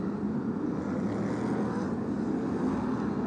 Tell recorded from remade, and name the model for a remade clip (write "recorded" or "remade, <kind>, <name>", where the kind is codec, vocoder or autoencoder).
recorded